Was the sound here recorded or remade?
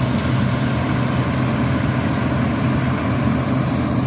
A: recorded